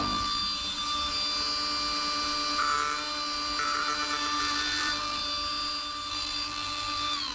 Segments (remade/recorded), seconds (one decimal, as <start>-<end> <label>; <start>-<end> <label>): 0.0-0.4 remade; 0.4-4.4 recorded; 4.4-5.2 remade; 5.2-6.1 recorded; 6.1-7.3 remade